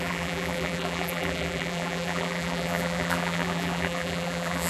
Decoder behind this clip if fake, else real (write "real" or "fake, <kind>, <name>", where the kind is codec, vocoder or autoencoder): fake, vocoder, BigVGAN v2